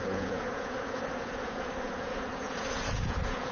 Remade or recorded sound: remade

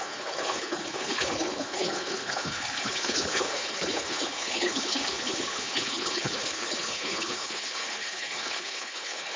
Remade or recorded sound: remade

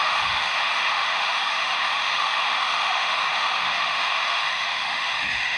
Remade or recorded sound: remade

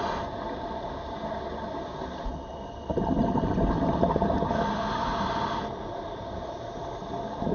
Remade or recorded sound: recorded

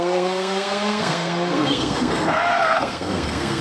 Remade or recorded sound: remade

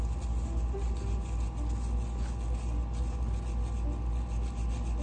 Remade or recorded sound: recorded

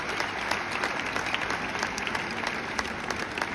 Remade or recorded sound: recorded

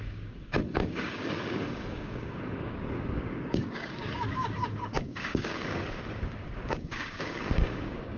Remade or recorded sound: remade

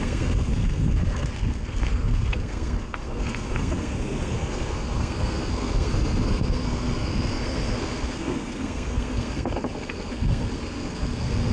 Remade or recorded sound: remade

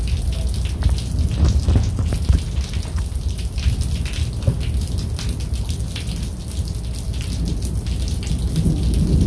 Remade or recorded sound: recorded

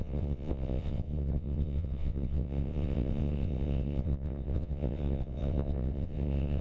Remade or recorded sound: remade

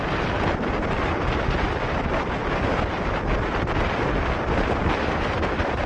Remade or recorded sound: remade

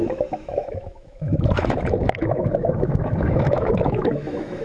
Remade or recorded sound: remade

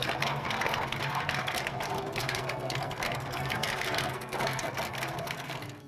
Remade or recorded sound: remade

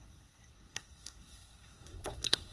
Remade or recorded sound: remade